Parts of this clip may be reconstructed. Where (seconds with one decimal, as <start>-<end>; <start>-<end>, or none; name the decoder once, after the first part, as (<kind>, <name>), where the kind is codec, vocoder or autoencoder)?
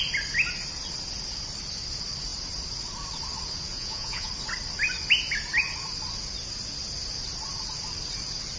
3.7-4.3 (vocoder, Vocos)